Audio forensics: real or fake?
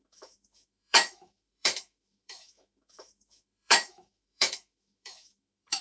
fake